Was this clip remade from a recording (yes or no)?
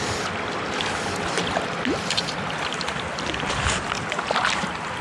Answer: no